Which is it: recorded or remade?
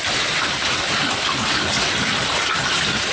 recorded